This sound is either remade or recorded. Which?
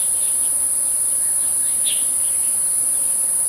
recorded